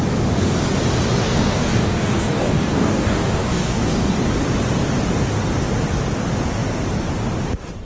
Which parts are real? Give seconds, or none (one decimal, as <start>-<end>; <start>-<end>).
0.0-1.2; 4.1-7.8